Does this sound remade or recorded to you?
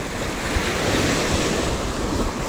recorded